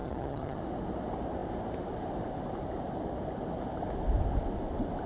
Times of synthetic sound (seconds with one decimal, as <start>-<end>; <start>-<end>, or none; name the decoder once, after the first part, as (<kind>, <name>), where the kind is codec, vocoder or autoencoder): 0.0-0.6 (vocoder, HiFi-GAN)